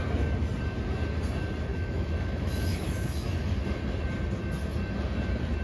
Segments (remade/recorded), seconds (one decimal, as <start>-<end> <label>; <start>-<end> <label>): 0.0-1.7 recorded; 1.7-3.5 remade; 3.5-5.6 recorded